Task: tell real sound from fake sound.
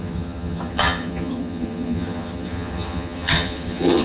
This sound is fake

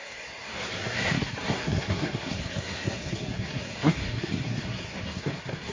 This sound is fake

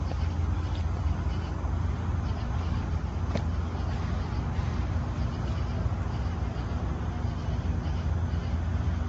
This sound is real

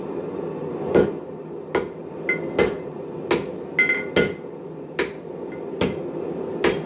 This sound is real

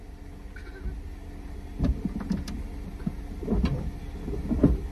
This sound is real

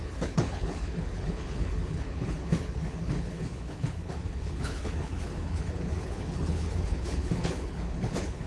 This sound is fake